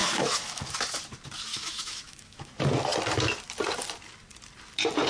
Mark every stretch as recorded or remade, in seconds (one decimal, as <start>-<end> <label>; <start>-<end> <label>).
0.0-0.6 remade; 0.6-1.5 recorded; 1.5-2.5 remade; 2.5-5.1 recorded